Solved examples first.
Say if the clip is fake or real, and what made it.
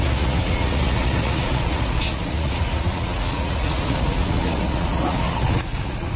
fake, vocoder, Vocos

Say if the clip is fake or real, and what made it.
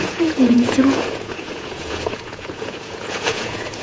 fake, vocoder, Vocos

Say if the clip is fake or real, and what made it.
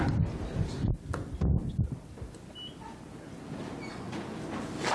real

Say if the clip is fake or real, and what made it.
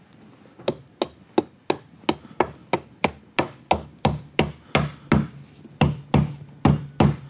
real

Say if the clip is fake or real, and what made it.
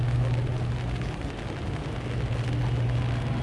real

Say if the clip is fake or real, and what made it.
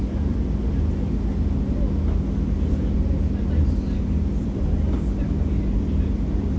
real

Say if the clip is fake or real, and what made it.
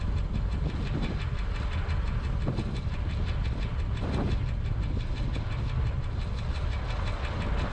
real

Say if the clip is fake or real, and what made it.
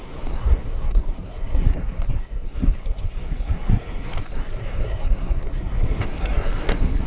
fake, codec, SNAC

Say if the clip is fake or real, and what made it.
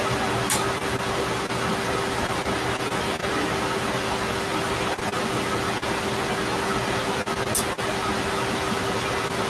real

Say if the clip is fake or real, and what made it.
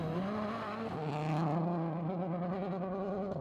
real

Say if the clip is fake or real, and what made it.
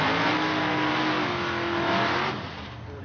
real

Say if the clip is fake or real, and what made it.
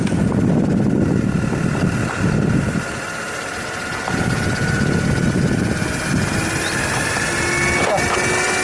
real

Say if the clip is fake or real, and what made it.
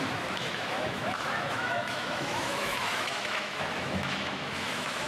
fake, autoencoder, DAC-VAE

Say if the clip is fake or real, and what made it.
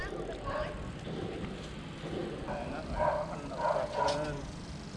real